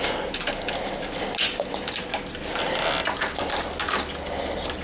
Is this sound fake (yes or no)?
no